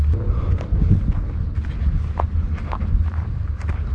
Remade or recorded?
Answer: recorded